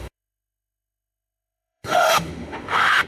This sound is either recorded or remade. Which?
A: remade